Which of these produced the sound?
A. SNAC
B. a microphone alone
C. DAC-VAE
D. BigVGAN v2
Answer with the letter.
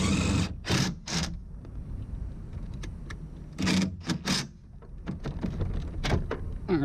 B